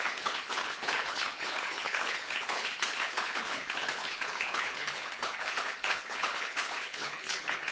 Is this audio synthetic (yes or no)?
yes